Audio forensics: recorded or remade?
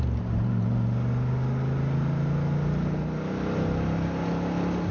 recorded